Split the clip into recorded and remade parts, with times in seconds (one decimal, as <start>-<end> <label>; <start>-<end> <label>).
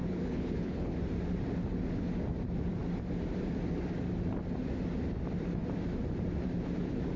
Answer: 0.0-0.9 remade; 0.9-7.2 recorded